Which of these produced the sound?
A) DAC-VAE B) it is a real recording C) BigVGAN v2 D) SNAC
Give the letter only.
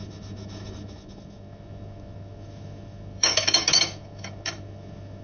A